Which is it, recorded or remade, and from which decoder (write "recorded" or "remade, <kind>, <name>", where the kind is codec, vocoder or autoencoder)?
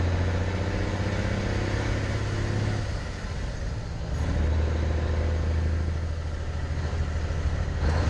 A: recorded